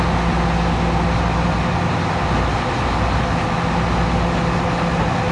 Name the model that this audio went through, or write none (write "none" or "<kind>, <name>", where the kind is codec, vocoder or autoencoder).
none